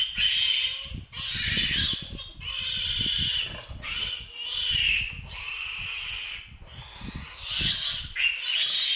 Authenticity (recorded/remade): recorded